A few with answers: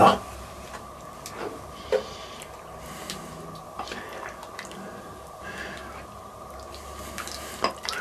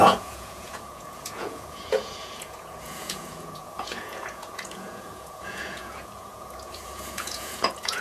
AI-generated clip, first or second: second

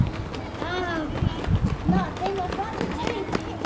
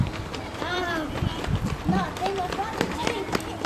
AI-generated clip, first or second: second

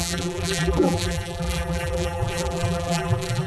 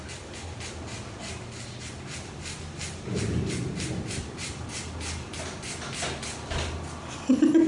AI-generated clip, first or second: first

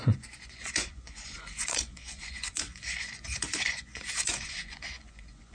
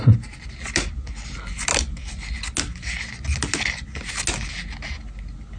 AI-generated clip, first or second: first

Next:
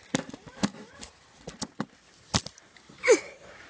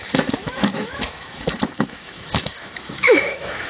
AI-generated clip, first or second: second